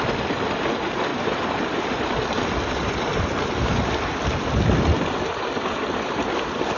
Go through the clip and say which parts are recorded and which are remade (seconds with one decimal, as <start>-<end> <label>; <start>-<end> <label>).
0.0-1.1 recorded; 1.1-2.9 remade; 2.9-4.1 recorded; 4.1-6.2 remade; 6.2-6.8 recorded